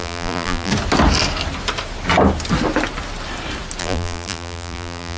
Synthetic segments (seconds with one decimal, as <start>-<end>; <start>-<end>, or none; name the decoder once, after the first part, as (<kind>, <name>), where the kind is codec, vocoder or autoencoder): 0.0-0.7 (vocoder, BigVGAN v2); 3.8-5.2